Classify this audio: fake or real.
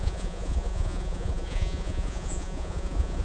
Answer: fake